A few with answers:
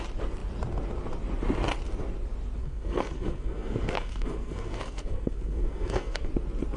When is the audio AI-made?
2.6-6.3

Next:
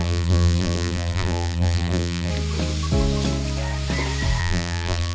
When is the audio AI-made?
0.0-2.3; 4.4-5.1

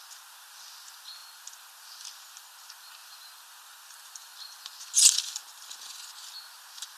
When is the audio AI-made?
none

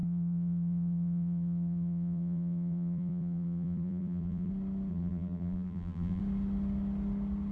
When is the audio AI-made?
0.0-4.5; 4.9-6.2